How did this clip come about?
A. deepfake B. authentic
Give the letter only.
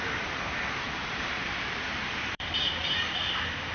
A